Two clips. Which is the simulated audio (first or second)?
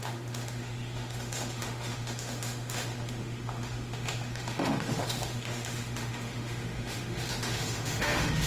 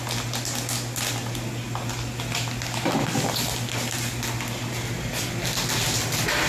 first